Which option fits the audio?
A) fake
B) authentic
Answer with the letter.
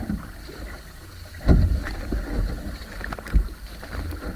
B